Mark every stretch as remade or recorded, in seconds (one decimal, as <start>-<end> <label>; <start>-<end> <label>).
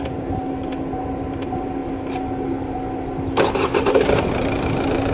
0.0-0.4 remade; 0.4-1.0 recorded; 1.0-1.8 remade; 1.8-3.9 recorded; 3.9-5.1 remade